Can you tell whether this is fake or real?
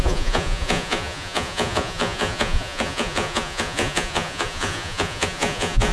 fake